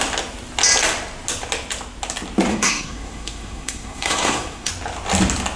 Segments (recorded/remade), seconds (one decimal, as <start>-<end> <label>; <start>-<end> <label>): 0.0-2.5 recorded; 2.5-4.7 remade; 4.7-5.6 recorded